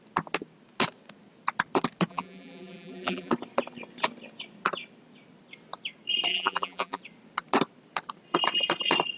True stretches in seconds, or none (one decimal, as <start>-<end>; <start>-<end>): 0.0-2.1; 3.3-6.3; 7.0-9.2